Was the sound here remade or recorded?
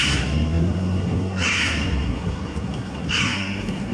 remade